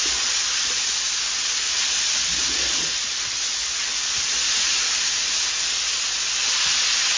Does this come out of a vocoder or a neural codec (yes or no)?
no